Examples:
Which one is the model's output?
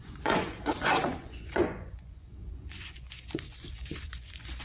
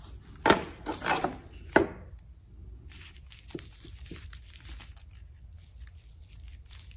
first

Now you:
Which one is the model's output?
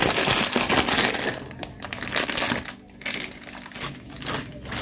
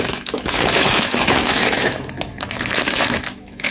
second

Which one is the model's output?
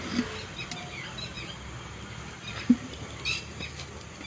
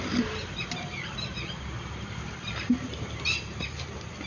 second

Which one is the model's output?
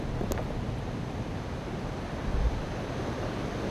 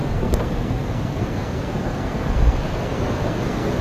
second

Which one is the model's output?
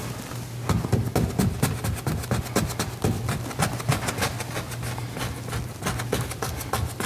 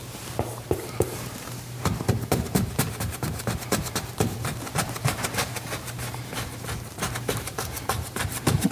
second